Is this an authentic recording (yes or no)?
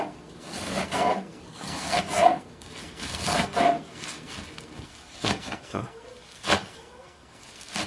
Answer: no